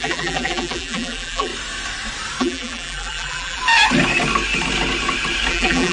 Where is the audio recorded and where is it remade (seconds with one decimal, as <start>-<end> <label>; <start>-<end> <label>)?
0.0-1.5 remade; 1.5-2.4 recorded; 2.4-3.6 remade; 3.6-5.5 recorded; 5.5-5.9 remade